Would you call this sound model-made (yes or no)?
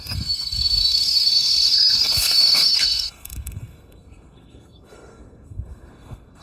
yes